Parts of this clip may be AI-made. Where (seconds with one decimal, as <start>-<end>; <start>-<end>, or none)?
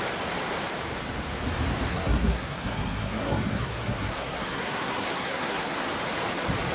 1.9-5.9